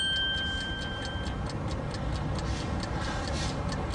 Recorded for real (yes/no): yes